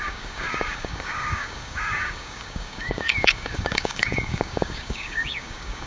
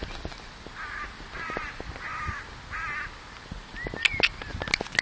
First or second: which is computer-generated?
first